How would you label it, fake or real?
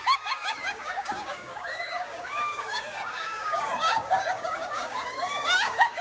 fake